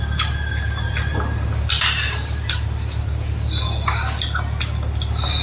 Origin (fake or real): real